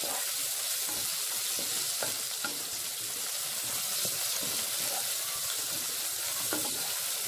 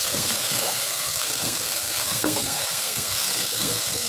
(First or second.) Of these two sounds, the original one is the first